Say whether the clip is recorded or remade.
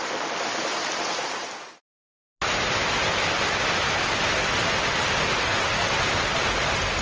recorded